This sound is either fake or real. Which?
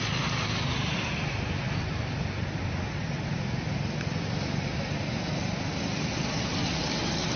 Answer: real